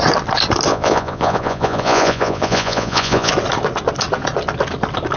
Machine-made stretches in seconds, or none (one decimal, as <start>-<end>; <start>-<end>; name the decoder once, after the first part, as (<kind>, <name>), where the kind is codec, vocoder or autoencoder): 0.7-3.3 (vocoder, Vocos)